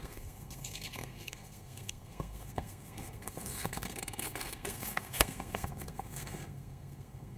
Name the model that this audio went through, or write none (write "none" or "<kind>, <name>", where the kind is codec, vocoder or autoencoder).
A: codec, SNAC